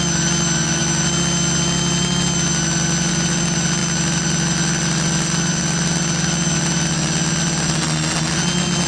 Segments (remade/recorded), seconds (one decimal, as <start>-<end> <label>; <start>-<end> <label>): 0.0-8.9 recorded